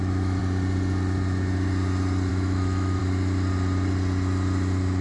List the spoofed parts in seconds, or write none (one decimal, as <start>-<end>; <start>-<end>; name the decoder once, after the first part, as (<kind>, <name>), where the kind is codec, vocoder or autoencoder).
0.0-0.4 (autoencoder, DAC-VAE); 2.3-3.0